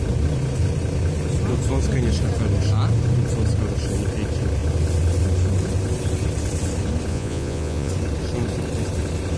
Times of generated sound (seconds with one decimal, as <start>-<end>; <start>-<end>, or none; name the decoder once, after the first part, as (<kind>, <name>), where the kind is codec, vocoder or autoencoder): 7.1-7.9 (vocoder, Vocos)

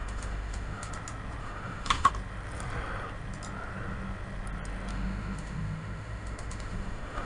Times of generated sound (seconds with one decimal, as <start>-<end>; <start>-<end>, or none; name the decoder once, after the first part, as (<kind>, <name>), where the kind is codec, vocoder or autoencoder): 0.0-0.9 (autoencoder, DAC-VAE); 1.4-2.1; 4.9-7.3

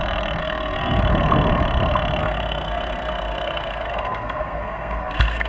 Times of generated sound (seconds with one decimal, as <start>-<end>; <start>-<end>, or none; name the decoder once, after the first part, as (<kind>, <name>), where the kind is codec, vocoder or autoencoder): 0.4-1.0 (codec, SNAC); 2.2-5.5

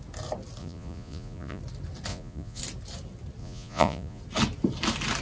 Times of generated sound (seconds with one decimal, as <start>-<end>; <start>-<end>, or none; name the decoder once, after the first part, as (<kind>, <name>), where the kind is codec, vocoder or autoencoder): 0.6-1.6 (vocoder, Vocos); 2.1-2.6; 3.4-4.2

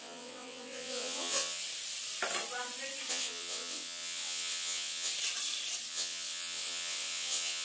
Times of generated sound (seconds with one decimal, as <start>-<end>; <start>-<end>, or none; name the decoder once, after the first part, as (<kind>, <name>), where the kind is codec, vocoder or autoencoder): 0.0-1.6 (vocoder, WaveNeXt); 3.1-5.1; 5.9-7.6